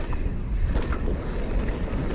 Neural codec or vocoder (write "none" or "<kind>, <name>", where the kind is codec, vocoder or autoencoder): none